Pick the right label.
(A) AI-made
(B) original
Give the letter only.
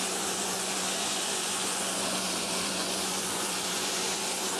A